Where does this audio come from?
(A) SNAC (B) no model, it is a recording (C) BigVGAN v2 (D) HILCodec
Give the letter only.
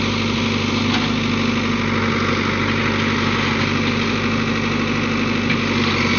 B